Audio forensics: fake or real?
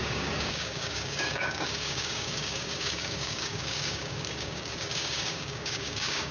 fake